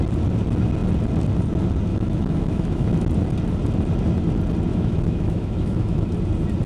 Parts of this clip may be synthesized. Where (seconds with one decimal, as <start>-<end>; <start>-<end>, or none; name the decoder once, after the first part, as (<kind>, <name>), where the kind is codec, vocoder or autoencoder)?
1.9-3.1 (autoencoder, DAC-VAE); 4.7-6.1